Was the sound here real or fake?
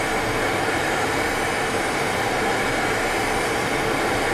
real